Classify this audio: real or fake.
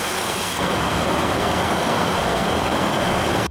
fake